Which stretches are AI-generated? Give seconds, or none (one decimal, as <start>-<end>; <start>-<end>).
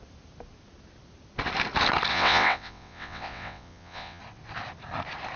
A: 2.1-4.2